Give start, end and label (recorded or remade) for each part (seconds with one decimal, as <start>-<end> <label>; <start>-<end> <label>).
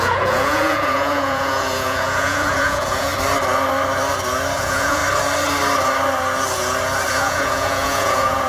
0.0-3.1 remade; 3.1-4.6 recorded; 4.6-5.0 remade; 5.0-7.1 recorded; 7.1-8.5 remade